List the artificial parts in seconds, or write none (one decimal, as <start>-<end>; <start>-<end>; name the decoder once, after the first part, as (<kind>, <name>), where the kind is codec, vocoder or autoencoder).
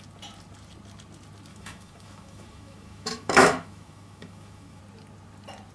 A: 1.5-4.8 (autoencoder, DAC-VAE)